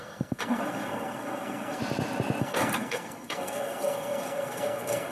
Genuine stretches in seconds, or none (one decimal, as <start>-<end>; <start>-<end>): 1.8-2.4